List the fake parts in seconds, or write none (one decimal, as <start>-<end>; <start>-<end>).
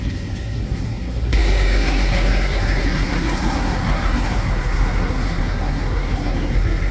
0.0-6.9